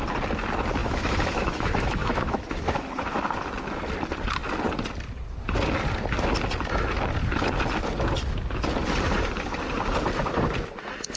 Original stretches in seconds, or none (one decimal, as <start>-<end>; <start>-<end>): 0.0-0.8; 3.2-11.2